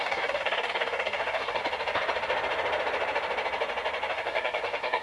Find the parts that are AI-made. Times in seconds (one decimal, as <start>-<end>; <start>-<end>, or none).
0.0-1.6; 4.1-5.0

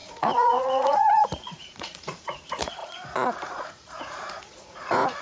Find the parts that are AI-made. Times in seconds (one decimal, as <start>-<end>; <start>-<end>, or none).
0.0-5.2

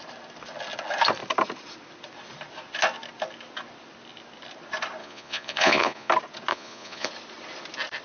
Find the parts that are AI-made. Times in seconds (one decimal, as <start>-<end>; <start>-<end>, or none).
5.0-6.1; 6.5-7.1

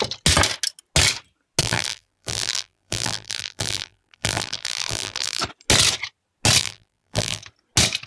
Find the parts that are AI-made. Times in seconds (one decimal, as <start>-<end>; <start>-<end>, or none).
1.6-5.4; 6.6-7.4